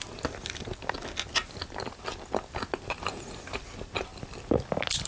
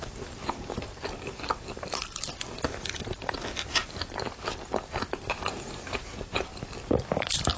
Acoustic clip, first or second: first